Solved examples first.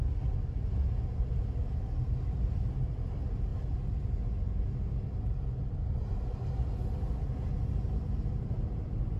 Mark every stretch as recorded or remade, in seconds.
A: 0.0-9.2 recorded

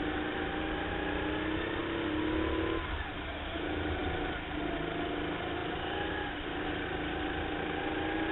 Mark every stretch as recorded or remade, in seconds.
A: 0.0-8.3 recorded

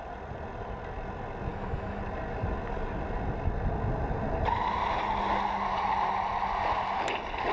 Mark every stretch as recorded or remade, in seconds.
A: 0.0-1.5 recorded; 1.5-2.0 remade; 2.0-7.5 recorded

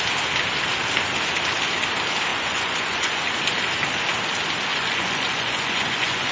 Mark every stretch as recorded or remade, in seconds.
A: 0.0-2.3 recorded; 2.3-3.2 remade; 3.2-4.7 recorded; 4.7-6.3 remade

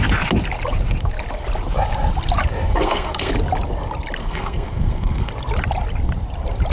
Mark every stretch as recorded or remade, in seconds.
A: 0.0-2.7 recorded; 2.7-3.3 remade; 3.3-4.2 recorded; 4.2-5.3 remade; 5.3-6.7 recorded

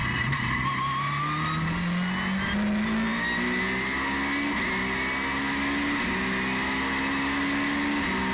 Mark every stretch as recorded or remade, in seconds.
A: 0.0-0.6 remade; 0.6-8.3 recorded